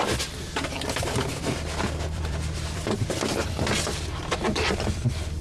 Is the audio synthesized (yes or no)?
yes